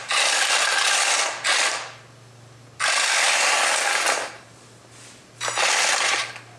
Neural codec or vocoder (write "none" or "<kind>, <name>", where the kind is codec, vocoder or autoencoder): none